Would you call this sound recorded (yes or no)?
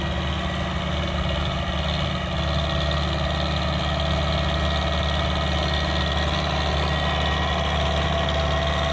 yes